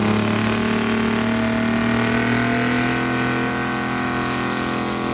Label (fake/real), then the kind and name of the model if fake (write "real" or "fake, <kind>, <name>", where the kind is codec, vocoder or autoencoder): real